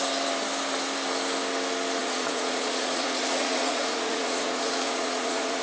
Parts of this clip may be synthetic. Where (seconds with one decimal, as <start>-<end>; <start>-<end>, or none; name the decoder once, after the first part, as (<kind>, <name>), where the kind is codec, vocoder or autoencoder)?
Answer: 2.0-5.6 (vocoder, Vocos)